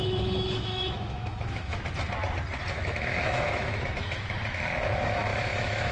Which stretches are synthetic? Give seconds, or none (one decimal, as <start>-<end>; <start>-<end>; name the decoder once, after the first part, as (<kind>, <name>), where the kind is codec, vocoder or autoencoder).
0.0-1.7 (autoencoder, DAC-VAE); 2.7-5.9